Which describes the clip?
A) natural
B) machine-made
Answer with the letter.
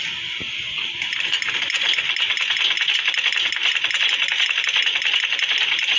A